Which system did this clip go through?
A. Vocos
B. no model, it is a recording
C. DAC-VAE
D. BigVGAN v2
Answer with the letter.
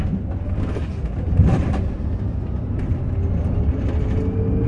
B